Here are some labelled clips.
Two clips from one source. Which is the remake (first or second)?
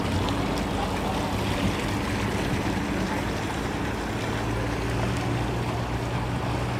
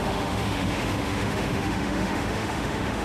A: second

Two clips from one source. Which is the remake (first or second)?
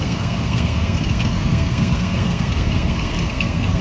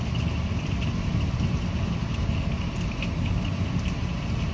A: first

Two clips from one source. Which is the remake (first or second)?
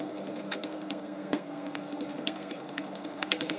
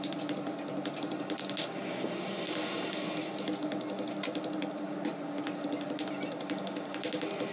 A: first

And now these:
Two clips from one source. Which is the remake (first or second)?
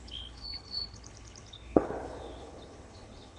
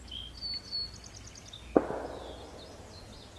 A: first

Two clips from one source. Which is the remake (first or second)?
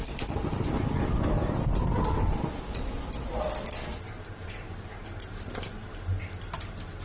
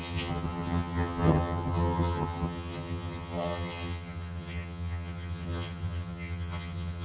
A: second